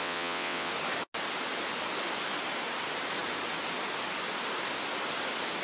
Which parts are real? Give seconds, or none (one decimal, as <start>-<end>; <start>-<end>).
0.7-5.6